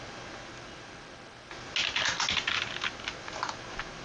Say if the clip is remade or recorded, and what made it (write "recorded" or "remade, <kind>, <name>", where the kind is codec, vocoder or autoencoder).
recorded